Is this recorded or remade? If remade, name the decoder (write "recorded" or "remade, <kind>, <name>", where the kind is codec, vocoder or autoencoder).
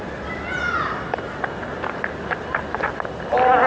recorded